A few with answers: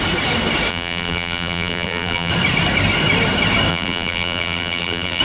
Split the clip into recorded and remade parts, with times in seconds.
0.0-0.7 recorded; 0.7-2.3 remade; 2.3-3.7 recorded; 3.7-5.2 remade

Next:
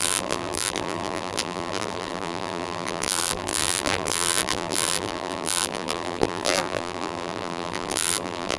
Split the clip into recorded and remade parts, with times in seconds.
0.0-8.6 remade

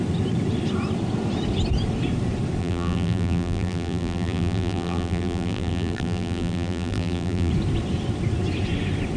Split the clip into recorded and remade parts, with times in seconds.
0.0-2.6 recorded; 2.6-7.5 remade; 7.5-9.2 recorded

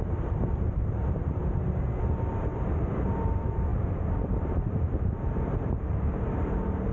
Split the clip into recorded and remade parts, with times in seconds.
0.0-1.4 remade; 1.4-2.3 recorded; 2.3-6.9 remade

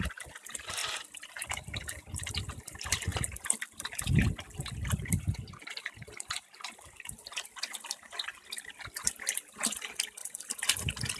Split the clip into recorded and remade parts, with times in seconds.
0.0-11.2 recorded